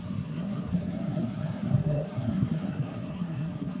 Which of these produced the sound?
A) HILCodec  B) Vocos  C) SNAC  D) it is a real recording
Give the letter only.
C